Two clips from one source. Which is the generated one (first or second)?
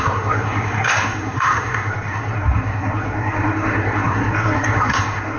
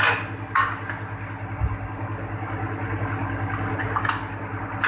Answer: first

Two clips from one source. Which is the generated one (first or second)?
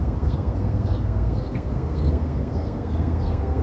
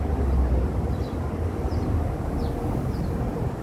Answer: first